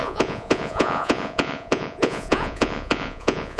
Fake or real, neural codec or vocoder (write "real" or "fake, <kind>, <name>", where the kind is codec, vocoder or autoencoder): fake, vocoder, Vocos